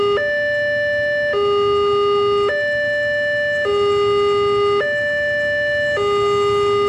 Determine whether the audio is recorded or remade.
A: recorded